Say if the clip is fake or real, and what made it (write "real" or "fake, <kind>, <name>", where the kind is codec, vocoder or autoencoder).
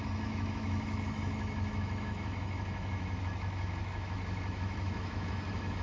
fake, autoencoder, DAC-VAE